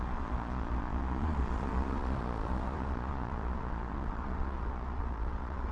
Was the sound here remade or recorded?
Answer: remade